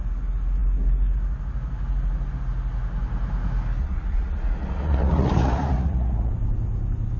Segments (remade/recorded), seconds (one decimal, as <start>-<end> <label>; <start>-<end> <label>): 0.0-3.8 recorded; 3.8-6.3 remade; 6.3-7.2 recorded